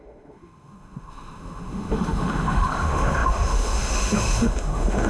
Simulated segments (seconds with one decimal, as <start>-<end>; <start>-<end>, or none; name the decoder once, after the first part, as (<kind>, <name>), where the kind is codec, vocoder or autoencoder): 0.0-5.1 (autoencoder, DAC-VAE)